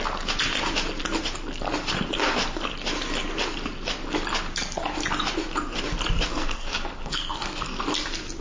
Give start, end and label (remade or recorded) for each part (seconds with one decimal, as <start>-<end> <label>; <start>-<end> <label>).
0.0-6.3 recorded; 6.3-7.8 remade; 7.8-8.4 recorded

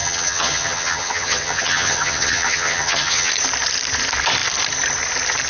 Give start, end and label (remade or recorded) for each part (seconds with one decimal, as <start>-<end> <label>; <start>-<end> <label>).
0.0-3.3 remade; 3.3-5.5 recorded

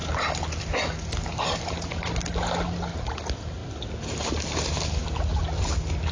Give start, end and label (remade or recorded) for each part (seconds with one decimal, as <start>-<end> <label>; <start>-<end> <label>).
0.0-6.1 recorded

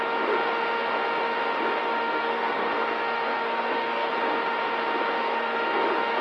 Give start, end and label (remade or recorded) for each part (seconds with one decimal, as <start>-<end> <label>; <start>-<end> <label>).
0.0-1.8 recorded; 1.8-4.1 remade; 4.1-5.2 recorded; 5.2-5.8 remade; 5.8-6.2 recorded

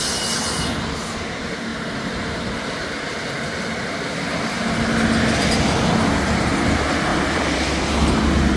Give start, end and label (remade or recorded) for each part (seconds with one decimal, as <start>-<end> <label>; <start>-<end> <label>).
0.0-7.1 recorded; 7.1-7.9 remade; 7.9-8.6 recorded

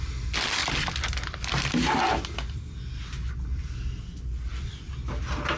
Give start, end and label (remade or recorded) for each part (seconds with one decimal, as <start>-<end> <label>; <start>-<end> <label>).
0.0-5.6 recorded